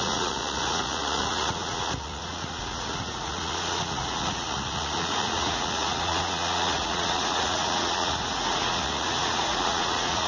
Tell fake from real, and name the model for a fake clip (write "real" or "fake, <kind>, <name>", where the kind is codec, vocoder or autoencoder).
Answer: fake, vocoder, Vocos